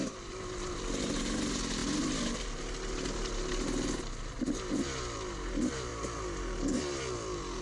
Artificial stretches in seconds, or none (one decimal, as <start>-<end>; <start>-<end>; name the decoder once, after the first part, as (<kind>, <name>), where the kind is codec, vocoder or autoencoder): none